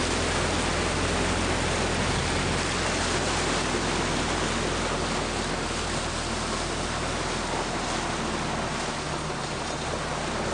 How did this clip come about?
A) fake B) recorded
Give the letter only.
B